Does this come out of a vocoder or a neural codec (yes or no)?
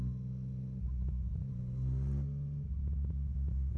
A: no